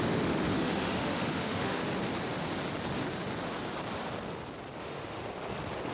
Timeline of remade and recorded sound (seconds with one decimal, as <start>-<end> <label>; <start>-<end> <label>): 0.0-1.8 remade; 1.8-4.8 recorded; 4.8-5.2 remade; 5.2-5.9 recorded